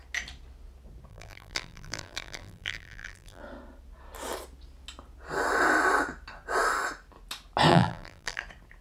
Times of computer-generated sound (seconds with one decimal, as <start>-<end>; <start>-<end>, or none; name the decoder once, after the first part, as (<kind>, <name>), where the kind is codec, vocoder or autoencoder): 1.1-3.4 (vocoder, BigVGAN v2); 7.7-8.4